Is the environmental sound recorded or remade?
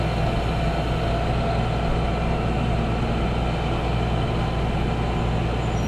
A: recorded